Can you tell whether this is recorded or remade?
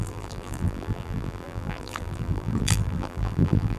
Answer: remade